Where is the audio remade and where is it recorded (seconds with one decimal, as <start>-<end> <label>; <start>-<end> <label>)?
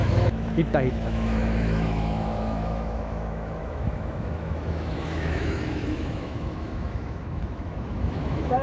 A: 0.0-8.6 remade